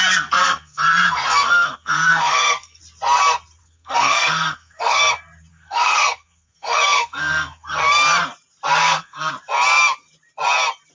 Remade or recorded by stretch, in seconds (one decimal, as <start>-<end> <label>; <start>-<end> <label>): 0.0-0.4 recorded; 0.4-2.8 remade; 2.8-3.6 recorded; 3.6-5.0 remade; 5.0-5.5 recorded; 5.5-7.8 remade; 7.8-8.8 recorded; 8.8-9.3 remade; 9.3-10.9 recorded